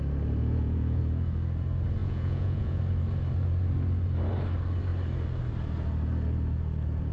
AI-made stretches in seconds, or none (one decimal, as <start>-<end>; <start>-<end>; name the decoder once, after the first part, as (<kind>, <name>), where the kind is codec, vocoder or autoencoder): 0.4-1.0 (vocoder, Vocos); 2.0-2.8